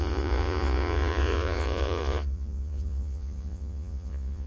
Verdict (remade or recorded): remade